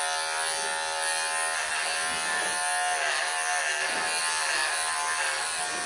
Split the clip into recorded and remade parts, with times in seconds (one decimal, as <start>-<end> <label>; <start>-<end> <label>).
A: 0.0-5.9 recorded